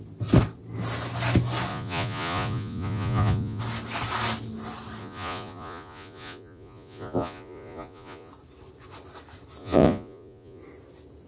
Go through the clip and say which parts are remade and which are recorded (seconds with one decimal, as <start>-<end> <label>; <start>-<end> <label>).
0.0-1.7 recorded; 1.7-3.6 remade; 3.6-5.0 recorded; 5.0-8.3 remade; 8.3-9.6 recorded; 9.6-10.6 remade; 10.6-11.3 recorded